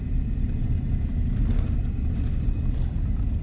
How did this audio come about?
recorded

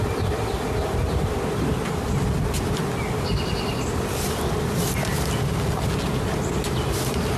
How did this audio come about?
recorded